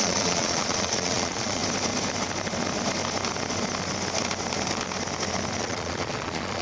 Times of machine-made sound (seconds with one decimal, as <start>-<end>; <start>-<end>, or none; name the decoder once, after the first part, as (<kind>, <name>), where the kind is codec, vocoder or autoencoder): 0.0-1.6 (vocoder, Vocos); 5.6-6.6